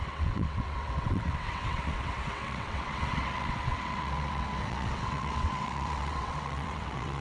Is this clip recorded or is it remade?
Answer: remade